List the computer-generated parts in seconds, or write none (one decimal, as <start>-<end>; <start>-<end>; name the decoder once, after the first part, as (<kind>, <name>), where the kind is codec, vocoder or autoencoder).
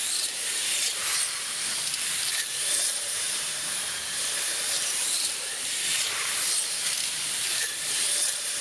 0.0-8.6 (vocoder, BigVGAN v2)